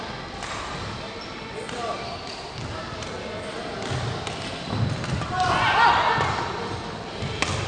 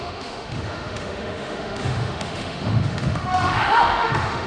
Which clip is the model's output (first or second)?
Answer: second